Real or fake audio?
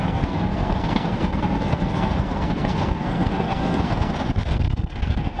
fake